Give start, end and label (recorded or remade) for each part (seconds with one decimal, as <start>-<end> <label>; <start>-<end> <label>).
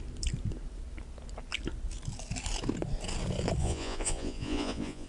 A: 0.0-3.6 recorded; 3.6-5.1 remade